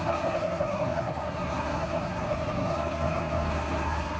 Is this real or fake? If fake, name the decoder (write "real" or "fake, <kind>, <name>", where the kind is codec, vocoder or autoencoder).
fake, codec, SNAC